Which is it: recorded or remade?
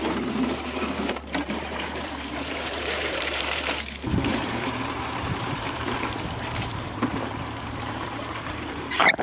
remade